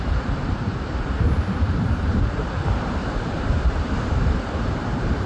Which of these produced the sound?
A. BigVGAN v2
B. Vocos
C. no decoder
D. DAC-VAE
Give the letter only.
A